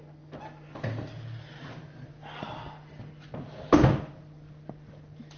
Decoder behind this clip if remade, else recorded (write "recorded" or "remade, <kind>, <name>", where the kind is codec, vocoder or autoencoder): recorded